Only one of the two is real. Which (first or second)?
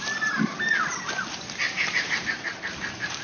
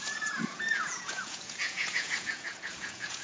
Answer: first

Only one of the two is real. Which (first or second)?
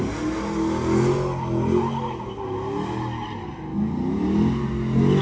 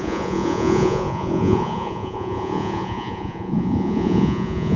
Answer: first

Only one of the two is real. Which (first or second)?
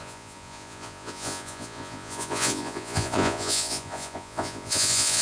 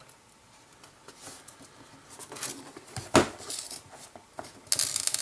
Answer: second